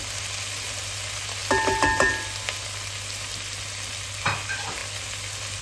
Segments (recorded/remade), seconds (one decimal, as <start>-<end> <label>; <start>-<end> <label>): 0.0-5.6 recorded